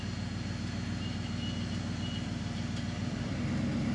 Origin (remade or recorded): recorded